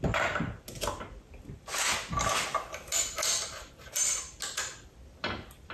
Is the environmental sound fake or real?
real